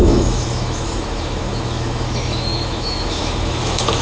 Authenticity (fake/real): fake